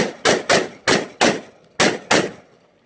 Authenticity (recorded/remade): recorded